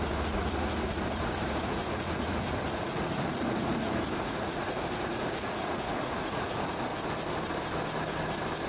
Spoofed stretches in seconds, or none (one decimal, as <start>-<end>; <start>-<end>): 0.0-6.9